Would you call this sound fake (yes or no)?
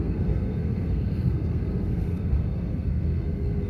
yes